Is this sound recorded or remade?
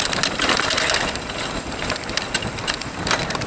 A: recorded